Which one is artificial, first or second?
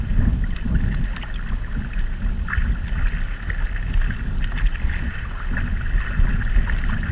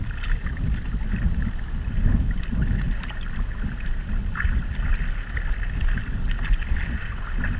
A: second